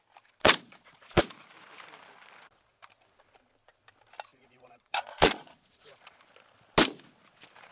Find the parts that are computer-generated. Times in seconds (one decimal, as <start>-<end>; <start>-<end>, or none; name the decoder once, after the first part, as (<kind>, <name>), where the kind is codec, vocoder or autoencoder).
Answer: 0.4-1.2 (vocoder, Vocos); 4.3-6.2